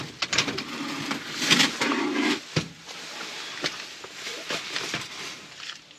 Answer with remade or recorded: recorded